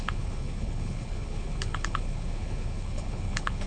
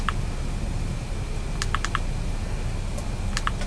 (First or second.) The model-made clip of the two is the first